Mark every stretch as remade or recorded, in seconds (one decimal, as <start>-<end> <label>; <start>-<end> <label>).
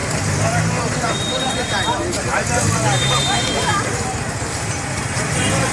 0.0-5.7 remade